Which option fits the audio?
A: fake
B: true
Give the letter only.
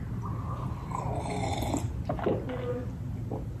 B